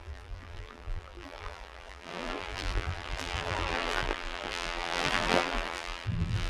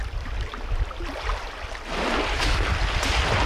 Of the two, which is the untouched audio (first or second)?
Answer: second